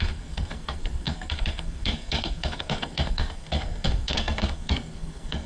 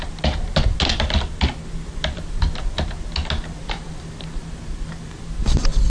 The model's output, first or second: first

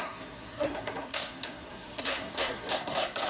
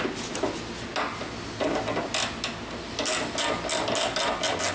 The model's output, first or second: first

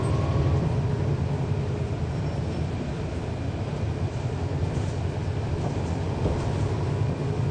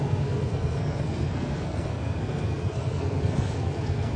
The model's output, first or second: second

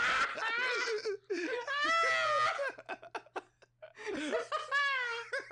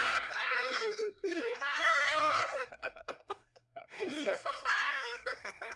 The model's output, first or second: second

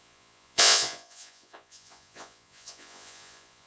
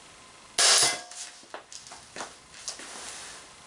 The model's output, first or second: first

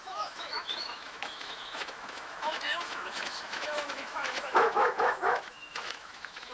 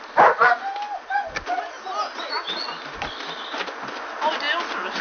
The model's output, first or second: first